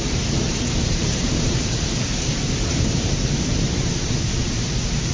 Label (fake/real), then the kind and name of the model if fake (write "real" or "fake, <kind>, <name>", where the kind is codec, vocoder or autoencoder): fake, vocoder, BigVGAN v2